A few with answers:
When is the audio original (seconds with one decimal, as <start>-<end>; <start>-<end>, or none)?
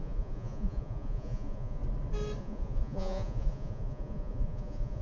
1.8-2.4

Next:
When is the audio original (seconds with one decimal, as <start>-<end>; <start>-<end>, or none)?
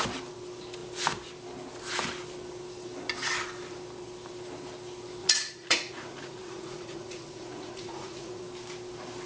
0.0-5.2; 8.4-9.3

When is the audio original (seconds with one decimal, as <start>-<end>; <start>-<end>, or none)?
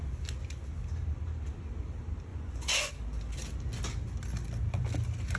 0.0-2.3; 2.9-5.4